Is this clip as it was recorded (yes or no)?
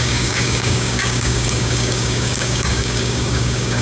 no